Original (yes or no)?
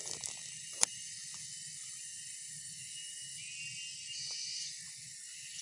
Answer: yes